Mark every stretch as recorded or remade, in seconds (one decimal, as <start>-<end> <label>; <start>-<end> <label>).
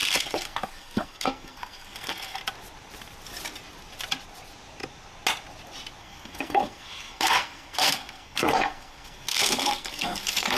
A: 0.0-2.4 remade; 2.4-6.0 recorded; 6.0-10.6 remade